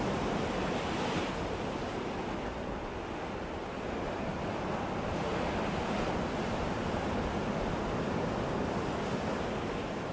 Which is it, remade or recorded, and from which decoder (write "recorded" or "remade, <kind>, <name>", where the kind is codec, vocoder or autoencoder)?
recorded